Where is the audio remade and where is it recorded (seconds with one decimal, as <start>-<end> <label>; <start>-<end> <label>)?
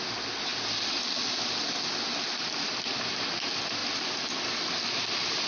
0.0-5.5 recorded